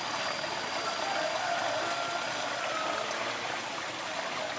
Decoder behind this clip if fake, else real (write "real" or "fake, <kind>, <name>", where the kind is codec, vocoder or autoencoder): real